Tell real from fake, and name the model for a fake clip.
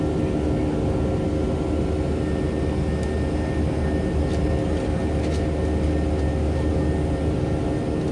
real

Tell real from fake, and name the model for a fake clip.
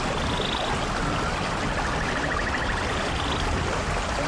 real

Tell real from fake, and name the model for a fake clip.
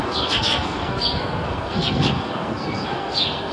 fake, codec, SNAC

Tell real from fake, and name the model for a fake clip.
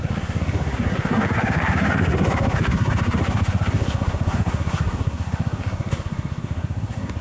fake, codec, SNAC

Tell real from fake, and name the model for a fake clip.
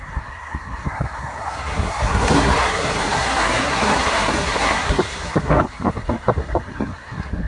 fake, codec, SNAC